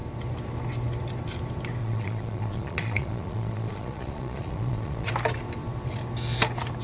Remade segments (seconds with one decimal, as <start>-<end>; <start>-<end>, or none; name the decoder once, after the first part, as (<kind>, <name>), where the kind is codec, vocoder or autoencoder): 1.8-5.1 (vocoder, Vocos)